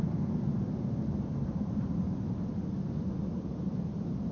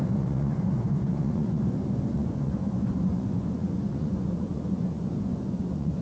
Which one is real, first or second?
first